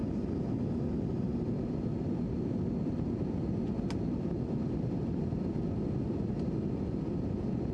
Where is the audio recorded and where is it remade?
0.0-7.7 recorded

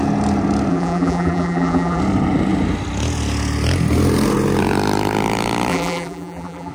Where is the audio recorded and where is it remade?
0.0-0.7 recorded; 0.7-2.0 remade; 2.0-5.7 recorded; 5.7-6.7 remade

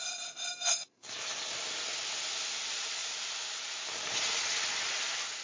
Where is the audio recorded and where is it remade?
0.0-5.4 recorded

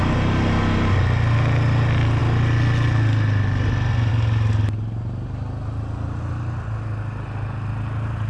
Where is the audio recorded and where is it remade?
0.0-8.3 recorded

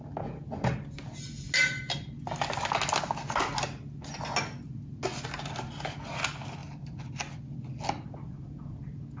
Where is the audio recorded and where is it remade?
0.0-9.2 recorded

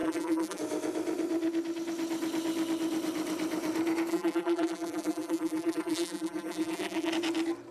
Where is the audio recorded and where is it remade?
0.0-0.6 remade; 0.6-4.1 recorded; 4.1-7.1 remade; 7.1-7.7 recorded

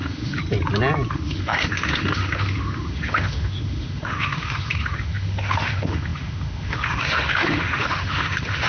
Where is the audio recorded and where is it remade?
0.0-0.4 remade; 0.4-1.1 recorded; 1.1-8.7 remade

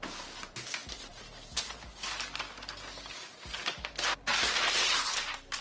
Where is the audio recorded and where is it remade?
0.0-5.6 recorded